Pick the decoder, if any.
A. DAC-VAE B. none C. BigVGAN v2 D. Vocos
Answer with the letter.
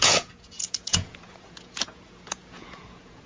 D